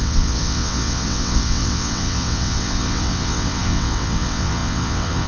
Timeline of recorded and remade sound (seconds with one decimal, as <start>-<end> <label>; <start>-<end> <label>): 0.0-5.3 remade